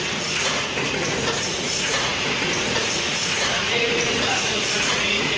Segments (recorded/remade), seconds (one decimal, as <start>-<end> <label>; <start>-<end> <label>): 0.0-5.4 remade